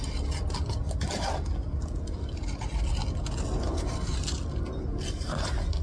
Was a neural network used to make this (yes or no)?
no